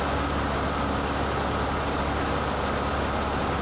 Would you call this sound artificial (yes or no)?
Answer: no